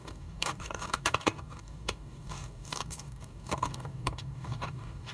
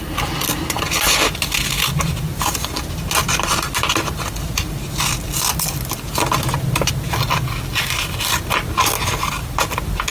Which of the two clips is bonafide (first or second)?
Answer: second